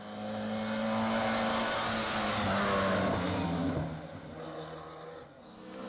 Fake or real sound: real